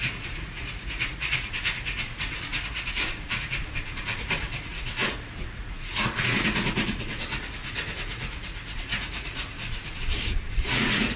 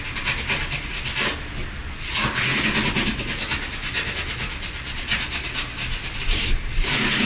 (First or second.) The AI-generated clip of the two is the first